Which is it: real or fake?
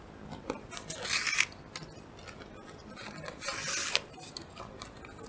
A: real